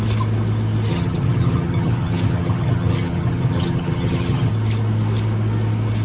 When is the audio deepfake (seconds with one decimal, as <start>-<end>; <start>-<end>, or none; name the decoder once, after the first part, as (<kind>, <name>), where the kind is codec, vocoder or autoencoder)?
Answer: 0.9-4.5 (vocoder, HiFi-GAN)